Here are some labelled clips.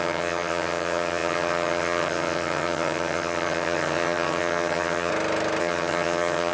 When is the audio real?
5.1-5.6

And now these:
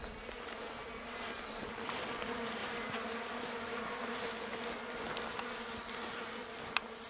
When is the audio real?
0.0-7.1

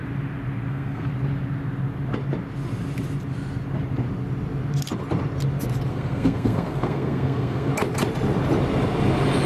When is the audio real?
0.0-0.7; 1.1-5.9; 7.7-9.5

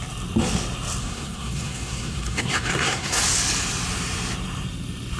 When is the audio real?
0.0-1.0; 3.2-5.2

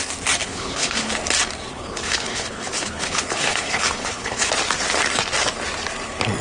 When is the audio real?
0.0-0.4; 1.1-1.7; 4.5-6.4